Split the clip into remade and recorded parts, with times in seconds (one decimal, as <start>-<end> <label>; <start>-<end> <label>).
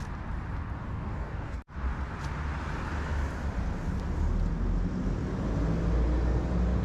0.0-0.8 recorded; 0.8-1.6 remade; 1.6-6.8 recorded